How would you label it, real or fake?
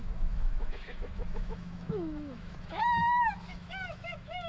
fake